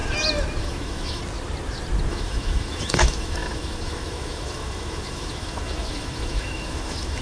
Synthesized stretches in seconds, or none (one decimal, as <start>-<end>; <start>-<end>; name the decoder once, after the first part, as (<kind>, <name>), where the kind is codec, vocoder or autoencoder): 0.6-1.2 (autoencoder, DAC-VAE); 2.1-7.2